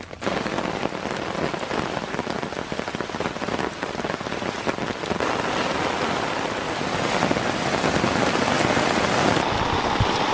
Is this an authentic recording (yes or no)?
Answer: yes